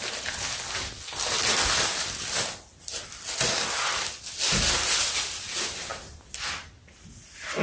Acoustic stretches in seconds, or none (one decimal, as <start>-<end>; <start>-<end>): 0.0-7.6